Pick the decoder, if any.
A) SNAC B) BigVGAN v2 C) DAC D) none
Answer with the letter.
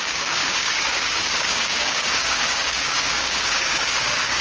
C